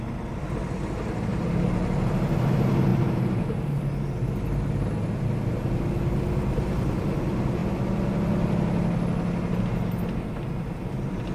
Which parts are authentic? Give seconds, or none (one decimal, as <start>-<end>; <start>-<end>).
0.0-11.3